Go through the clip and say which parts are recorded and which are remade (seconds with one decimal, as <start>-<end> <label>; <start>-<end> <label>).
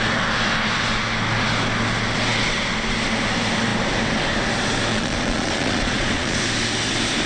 0.0-4.9 recorded; 4.9-6.4 remade; 6.4-7.3 recorded